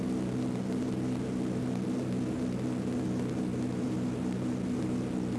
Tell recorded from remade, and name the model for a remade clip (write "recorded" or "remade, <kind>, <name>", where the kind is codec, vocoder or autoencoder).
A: recorded